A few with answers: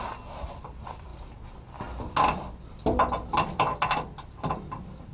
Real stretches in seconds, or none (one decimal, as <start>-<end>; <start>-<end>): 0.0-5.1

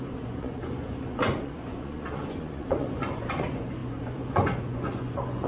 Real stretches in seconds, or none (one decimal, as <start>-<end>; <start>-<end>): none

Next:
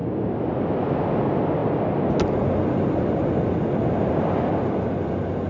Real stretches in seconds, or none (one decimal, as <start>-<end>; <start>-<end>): 0.0-5.5

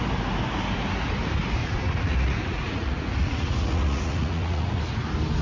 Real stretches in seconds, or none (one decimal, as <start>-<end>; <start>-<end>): 0.0-1.6; 4.8-5.4

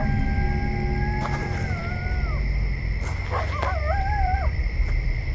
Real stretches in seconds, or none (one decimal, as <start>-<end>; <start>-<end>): 0.0-1.2; 1.8-4.0

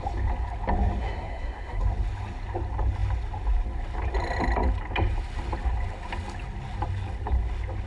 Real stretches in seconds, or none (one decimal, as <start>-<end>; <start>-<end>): 0.0-1.0; 1.8-7.9

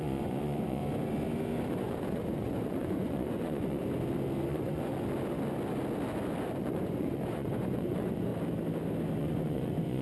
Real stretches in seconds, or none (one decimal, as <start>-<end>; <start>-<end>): 0.8-1.6; 3.8-4.5; 4.9-6.6; 8.3-9.2